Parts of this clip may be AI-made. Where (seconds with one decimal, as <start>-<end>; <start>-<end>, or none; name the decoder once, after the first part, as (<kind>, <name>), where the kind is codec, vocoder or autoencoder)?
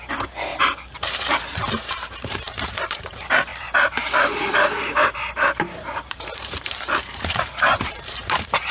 0.5-3.0 (vocoder, BigVGAN v2); 3.5-8.7